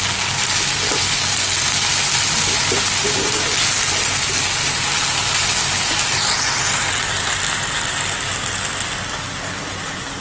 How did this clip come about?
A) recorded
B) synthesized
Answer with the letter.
A